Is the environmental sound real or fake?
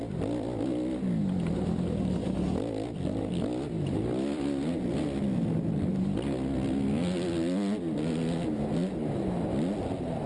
real